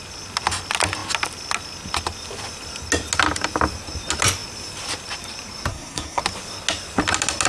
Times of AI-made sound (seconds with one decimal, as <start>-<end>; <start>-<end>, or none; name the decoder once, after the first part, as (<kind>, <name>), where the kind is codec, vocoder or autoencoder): 5.7-6.2 (codec, SNAC)